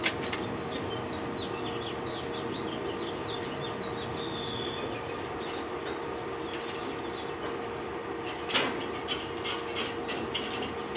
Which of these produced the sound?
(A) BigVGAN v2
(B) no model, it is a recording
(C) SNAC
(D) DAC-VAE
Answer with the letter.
B